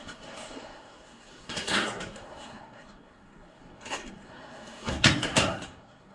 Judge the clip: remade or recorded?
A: remade